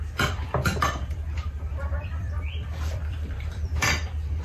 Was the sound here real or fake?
fake